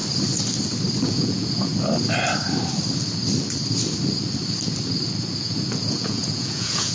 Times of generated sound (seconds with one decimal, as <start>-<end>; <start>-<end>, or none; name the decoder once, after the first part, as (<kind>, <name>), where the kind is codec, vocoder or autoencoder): 1.0-1.7 (vocoder, Vocos); 5.4-6.9